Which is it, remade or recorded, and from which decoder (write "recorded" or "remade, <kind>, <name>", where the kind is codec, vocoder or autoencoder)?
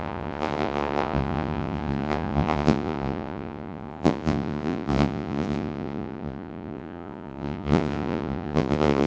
remade, vocoder, Vocos